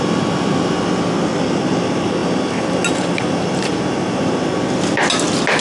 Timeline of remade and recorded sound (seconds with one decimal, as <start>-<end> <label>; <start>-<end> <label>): 0.0-5.6 recorded